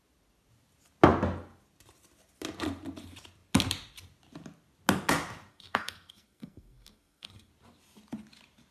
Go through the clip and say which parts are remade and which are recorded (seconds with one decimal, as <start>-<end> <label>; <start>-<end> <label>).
0.0-5.5 recorded; 5.5-7.5 remade; 7.5-8.7 recorded